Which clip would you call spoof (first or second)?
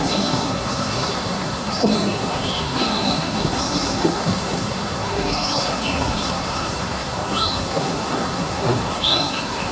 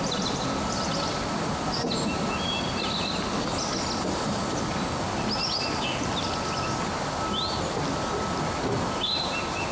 first